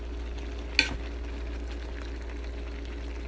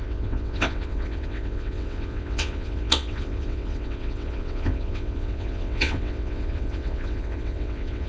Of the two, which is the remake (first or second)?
second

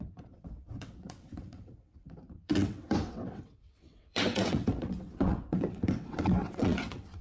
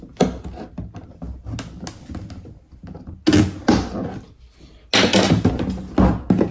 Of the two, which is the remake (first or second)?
first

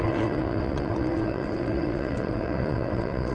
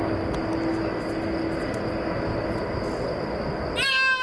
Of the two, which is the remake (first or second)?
first